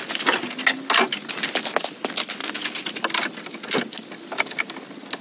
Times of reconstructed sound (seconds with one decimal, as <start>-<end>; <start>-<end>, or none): none